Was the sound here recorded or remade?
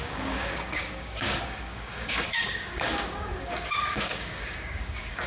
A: remade